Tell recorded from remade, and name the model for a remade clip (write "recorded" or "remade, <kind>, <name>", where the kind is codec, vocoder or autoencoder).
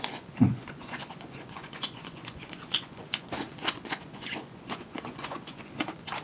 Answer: remade, vocoder, Vocos